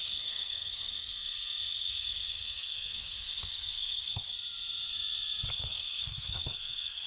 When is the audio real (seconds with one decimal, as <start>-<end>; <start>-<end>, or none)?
4.3-5.5